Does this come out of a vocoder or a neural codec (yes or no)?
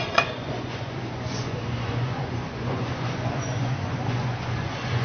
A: yes